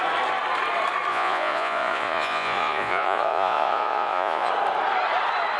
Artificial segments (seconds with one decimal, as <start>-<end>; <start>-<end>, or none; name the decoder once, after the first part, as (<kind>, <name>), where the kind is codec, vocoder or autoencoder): 1.1-4.5 (vocoder, Vocos)